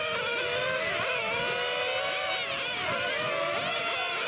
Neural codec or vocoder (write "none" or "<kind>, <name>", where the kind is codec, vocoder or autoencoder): none